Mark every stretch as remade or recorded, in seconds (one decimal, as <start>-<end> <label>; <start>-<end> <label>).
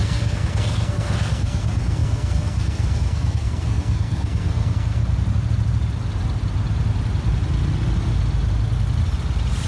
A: 0.0-5.0 remade; 5.0-9.7 recorded